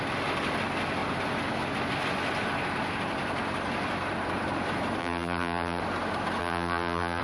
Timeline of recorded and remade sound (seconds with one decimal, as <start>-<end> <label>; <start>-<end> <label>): 0.0-5.0 recorded; 5.0-5.8 remade; 5.8-6.4 recorded; 6.4-7.2 remade